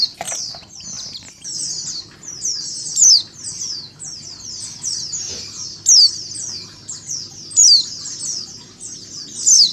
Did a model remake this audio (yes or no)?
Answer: no